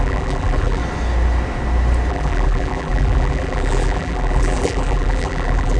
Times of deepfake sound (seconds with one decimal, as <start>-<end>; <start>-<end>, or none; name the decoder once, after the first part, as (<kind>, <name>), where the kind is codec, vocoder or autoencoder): 0.0-0.8 (vocoder, BigVGAN v2); 2.1-5.8